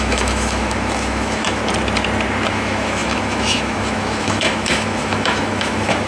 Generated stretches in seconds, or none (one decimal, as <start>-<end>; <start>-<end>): 0.0-1.6; 2.5-6.1